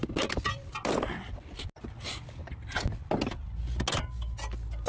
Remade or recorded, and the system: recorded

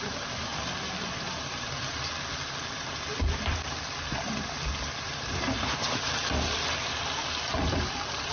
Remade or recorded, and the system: remade, vocoder, BigVGAN v2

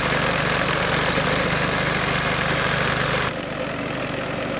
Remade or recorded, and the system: recorded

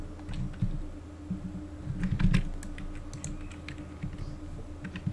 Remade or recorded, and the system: recorded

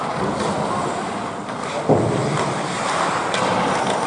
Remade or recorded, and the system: recorded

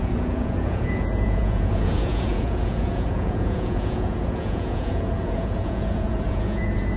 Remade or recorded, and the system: remade, vocoder, Vocos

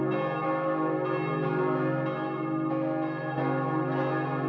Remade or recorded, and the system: recorded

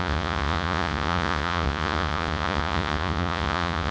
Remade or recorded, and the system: remade, vocoder, Vocos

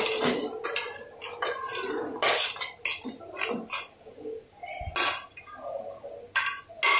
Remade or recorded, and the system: recorded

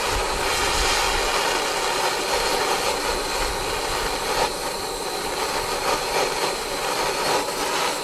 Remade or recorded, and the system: recorded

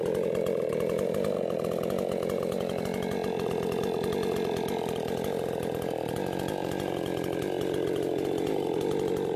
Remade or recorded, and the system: recorded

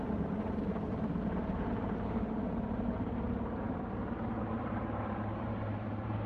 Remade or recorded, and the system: remade, vocoder, BigVGAN v2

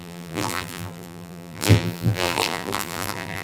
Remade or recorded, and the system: remade, vocoder, BigVGAN v2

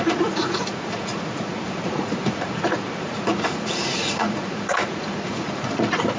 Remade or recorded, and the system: remade, vocoder, Vocos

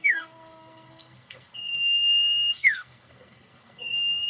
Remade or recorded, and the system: remade, codec, SNAC